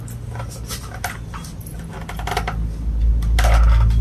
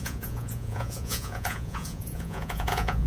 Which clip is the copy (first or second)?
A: second